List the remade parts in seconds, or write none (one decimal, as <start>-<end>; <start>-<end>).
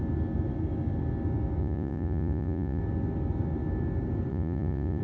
1.6-2.8; 4.3-5.0